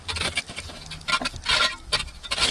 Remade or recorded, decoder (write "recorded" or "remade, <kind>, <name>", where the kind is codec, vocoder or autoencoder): recorded